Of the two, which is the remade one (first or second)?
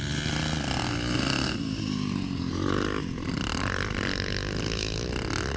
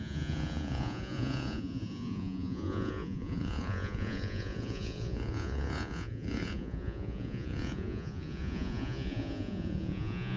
second